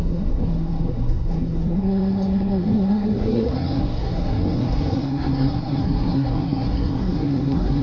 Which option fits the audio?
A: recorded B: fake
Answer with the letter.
B